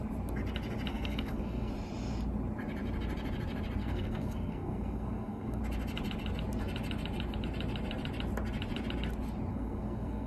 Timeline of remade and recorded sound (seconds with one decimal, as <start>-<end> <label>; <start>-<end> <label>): 0.0-0.9 recorded; 0.9-1.7 remade; 1.7-3.8 recorded; 3.8-5.6 remade; 5.6-9.5 recorded; 9.5-10.3 remade